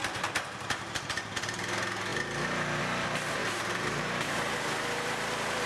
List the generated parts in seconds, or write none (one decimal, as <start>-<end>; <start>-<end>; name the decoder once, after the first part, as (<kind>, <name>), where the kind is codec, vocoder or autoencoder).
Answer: 0.0-1.0 (vocoder, BigVGAN v2); 3.4-5.7